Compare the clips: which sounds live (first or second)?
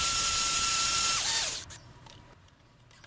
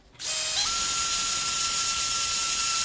second